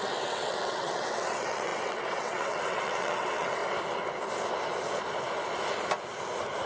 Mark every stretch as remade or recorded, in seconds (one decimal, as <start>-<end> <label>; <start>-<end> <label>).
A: 0.0-3.6 remade; 3.6-6.7 recorded